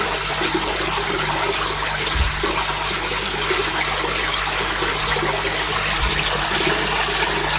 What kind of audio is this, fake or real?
real